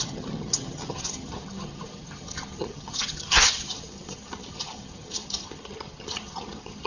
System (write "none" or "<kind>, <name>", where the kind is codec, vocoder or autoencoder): vocoder, HiFi-GAN